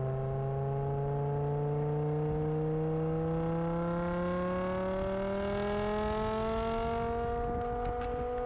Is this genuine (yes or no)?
yes